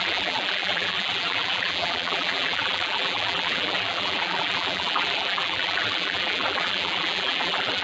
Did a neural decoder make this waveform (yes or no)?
yes